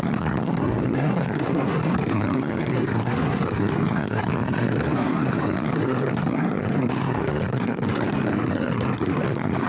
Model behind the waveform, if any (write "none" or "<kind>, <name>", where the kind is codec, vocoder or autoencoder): codec, SNAC